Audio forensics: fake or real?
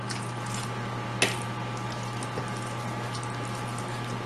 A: real